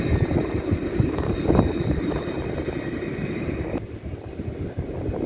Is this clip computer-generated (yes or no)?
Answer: yes